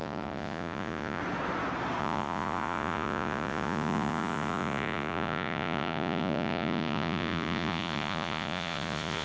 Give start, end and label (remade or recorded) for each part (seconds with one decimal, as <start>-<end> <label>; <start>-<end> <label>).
0.0-1.2 remade; 1.2-2.0 recorded; 2.0-9.2 remade